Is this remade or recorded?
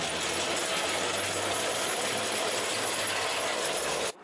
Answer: recorded